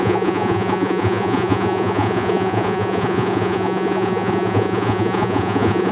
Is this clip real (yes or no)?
no